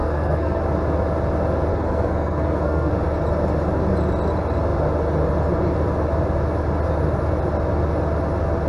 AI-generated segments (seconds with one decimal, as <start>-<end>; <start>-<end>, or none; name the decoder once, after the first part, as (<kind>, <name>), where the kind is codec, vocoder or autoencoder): 0.0-0.6 (codec, SNAC); 1.7-2.9